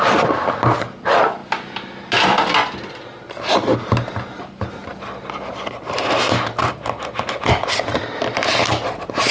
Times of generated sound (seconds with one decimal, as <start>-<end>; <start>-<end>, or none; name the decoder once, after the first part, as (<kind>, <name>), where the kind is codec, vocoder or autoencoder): none

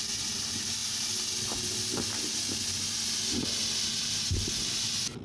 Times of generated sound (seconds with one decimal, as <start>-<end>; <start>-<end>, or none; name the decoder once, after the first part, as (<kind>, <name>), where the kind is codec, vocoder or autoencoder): none

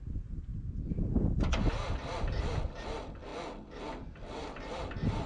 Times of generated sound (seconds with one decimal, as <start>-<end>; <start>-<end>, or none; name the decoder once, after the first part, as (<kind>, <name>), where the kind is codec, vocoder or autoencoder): 0.0-0.5 (vocoder, BigVGAN v2); 2.2-3.3; 3.9-5.3

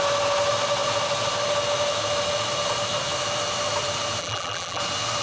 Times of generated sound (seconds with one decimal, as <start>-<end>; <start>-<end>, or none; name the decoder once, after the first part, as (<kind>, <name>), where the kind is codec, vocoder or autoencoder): 4.2-4.8 (vocoder, BigVGAN v2)

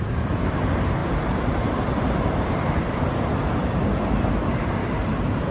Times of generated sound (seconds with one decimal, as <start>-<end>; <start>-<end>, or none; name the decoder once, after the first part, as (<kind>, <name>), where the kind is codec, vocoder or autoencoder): 0.0-5.5 (vocoder, BigVGAN v2)

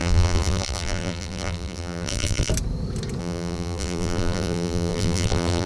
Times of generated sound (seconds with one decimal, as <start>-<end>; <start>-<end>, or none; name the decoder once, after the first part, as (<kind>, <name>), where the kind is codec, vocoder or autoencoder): 0.0-2.5 (vocoder, BigVGAN v2); 3.2-5.7

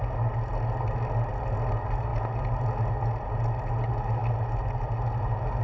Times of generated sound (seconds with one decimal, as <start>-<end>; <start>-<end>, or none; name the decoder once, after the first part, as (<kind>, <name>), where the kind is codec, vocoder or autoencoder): none